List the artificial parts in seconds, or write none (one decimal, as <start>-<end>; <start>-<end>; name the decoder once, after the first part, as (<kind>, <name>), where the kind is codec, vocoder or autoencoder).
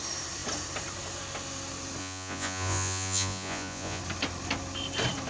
2.0-4.0 (vocoder, Vocos)